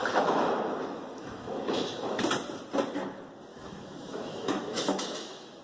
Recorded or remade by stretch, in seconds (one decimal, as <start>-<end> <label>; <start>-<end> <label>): 0.0-2.2 remade; 2.2-3.5 recorded; 3.5-5.6 remade